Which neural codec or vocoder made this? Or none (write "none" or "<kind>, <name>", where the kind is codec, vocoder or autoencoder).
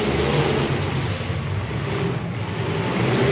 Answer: none